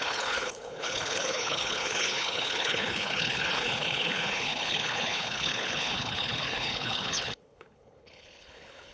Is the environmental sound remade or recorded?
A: remade